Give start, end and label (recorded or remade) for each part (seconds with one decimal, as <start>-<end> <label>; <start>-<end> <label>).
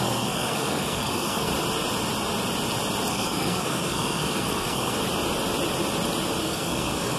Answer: 0.0-1.5 remade; 1.5-3.1 recorded; 3.1-5.0 remade; 5.0-6.4 recorded; 6.4-7.2 remade